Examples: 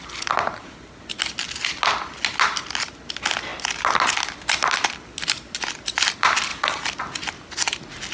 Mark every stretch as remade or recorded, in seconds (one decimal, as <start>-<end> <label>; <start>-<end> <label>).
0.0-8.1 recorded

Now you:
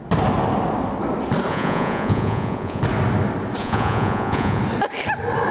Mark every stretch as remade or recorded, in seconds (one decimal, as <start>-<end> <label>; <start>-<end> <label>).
0.0-1.5 recorded; 1.5-2.8 remade; 2.8-3.6 recorded; 3.6-4.6 remade; 4.6-5.5 recorded

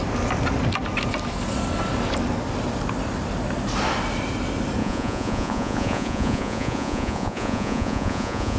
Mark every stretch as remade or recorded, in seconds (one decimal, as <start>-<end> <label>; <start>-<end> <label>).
0.0-4.8 recorded; 4.8-8.6 remade

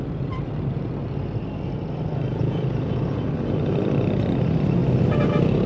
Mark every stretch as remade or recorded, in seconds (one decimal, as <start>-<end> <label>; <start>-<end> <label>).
0.0-2.3 recorded; 2.3-3.3 remade; 3.3-5.7 recorded

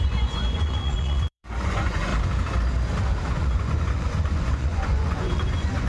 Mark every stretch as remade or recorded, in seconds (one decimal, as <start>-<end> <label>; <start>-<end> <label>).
0.0-2.1 remade; 2.1-3.3 recorded; 3.3-5.9 remade